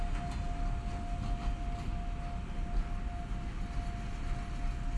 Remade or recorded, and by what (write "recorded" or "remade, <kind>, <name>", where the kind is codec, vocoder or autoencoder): recorded